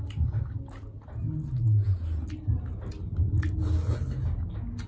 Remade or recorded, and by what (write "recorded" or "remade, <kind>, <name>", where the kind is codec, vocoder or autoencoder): recorded